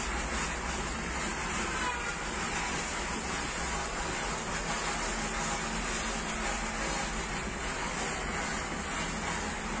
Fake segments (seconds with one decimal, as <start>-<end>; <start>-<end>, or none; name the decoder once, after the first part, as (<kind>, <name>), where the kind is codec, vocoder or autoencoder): none